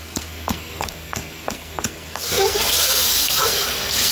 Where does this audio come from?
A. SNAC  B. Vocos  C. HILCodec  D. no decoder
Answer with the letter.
A